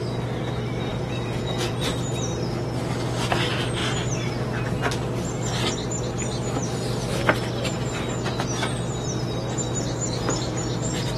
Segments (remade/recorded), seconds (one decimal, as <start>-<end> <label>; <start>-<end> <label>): 0.0-0.9 recorded; 0.9-1.7 remade; 1.7-11.2 recorded